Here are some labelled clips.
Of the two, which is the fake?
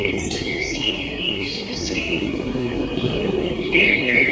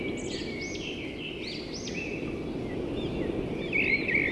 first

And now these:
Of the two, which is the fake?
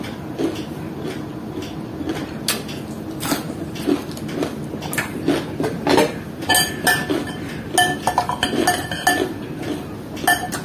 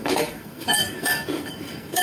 second